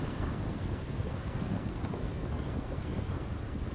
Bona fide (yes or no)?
no